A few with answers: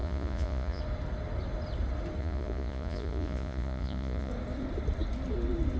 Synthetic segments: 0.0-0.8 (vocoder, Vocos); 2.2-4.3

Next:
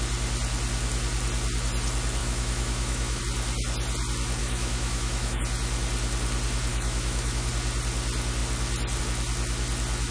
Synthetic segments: 2.2-3.2 (autoencoder, DAC-VAE); 4.4-5.4; 6.7-7.5

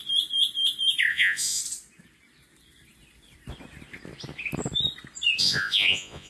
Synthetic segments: 1.1-1.6 (vocoder, Vocos); 5.4-6.3

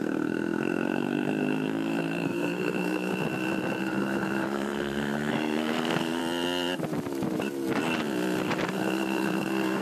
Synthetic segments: 0.0-3.1 (codec, SNAC); 3.8-6.2; 8.7-9.8

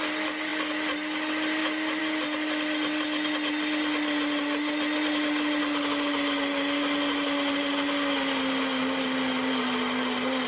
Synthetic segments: none

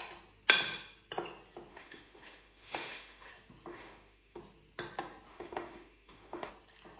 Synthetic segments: 1.7-3.3 (autoencoder, DAC-VAE); 3.7-4.4; 5.3-6.5

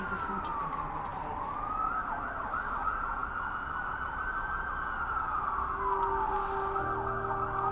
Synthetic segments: none